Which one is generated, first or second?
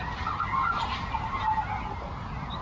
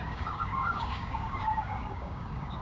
second